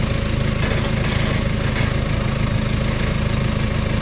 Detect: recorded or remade recorded